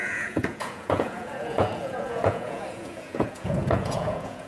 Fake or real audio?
fake